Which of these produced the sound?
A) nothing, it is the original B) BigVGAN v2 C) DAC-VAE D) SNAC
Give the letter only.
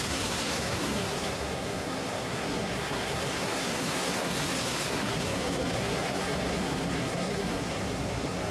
D